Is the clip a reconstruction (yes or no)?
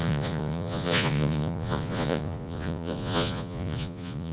yes